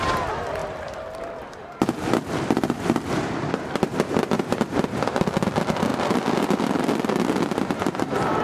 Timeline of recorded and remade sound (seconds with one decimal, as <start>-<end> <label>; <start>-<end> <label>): 0.0-0.6 recorded; 0.6-4.2 remade; 4.2-8.4 recorded